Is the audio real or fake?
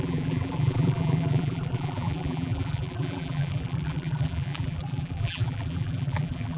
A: fake